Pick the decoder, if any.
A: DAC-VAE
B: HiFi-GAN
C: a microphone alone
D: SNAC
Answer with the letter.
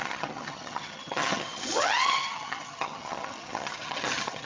B